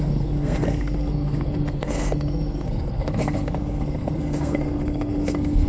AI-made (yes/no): yes